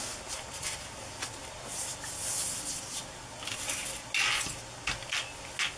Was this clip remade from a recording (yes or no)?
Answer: no